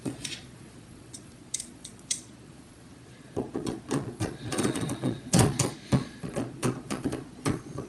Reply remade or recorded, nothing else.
remade